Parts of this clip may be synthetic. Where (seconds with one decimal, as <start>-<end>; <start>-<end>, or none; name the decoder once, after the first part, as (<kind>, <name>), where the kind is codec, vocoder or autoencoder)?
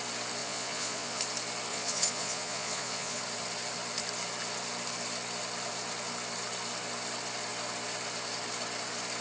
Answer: 0.4-1.2 (vocoder, Vocos); 1.7-3.2